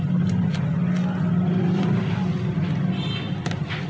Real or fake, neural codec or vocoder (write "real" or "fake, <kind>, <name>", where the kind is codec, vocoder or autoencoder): real